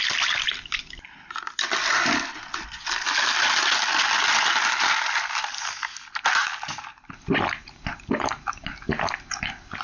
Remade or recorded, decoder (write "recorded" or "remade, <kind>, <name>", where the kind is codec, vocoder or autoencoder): recorded